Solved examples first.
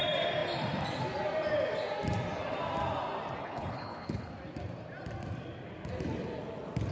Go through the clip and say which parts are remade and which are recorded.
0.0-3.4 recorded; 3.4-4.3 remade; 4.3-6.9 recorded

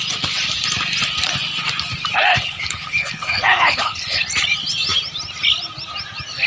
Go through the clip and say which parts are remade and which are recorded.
0.0-2.3 recorded; 2.3-4.2 remade; 4.2-6.5 recorded

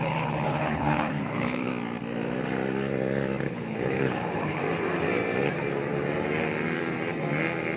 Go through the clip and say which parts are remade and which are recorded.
0.0-1.7 remade; 1.7-3.5 recorded; 3.5-4.6 remade; 4.6-7.8 recorded

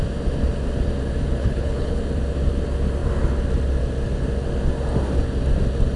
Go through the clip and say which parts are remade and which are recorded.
0.0-1.4 recorded; 1.4-2.0 remade; 2.0-6.0 recorded

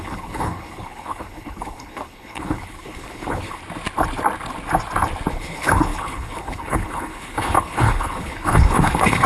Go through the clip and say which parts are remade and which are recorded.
0.0-3.6 remade; 3.6-5.3 recorded; 5.3-9.3 remade